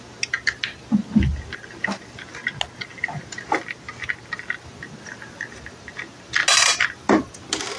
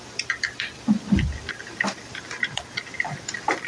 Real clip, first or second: first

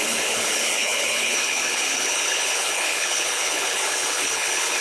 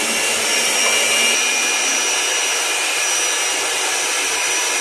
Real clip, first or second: second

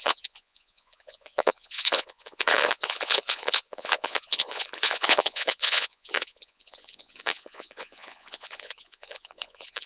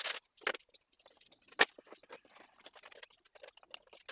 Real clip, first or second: second